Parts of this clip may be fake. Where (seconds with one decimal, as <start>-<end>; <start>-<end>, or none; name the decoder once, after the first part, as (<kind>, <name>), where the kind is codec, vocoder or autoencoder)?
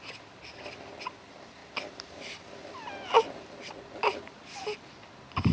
none